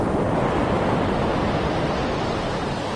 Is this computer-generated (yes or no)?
yes